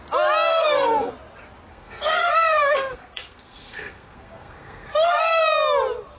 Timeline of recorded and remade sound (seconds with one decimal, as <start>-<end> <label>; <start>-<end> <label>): 0.0-0.5 recorded; 0.5-1.1 remade; 1.1-1.7 recorded; 1.7-5.4 remade; 5.4-6.2 recorded